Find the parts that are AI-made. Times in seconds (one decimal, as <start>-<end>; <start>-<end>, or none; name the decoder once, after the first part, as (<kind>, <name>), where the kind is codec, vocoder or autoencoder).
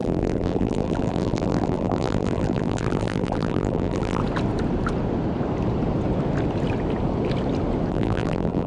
0.0-4.2 (vocoder, BigVGAN v2); 7.9-8.7